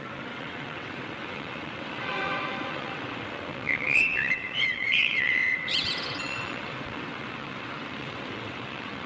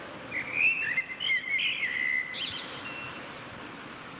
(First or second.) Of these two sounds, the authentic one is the second